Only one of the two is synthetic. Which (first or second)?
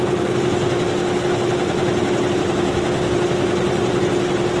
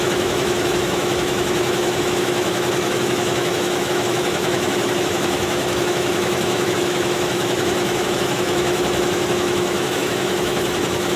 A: second